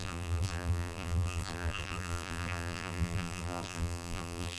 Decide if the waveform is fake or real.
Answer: fake